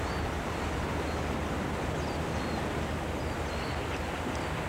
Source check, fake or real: real